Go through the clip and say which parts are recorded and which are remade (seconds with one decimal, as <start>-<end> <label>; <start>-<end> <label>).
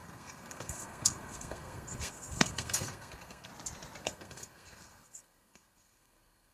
0.0-3.5 remade; 3.5-4.0 recorded; 4.0-6.5 remade